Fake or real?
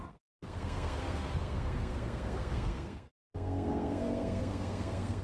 fake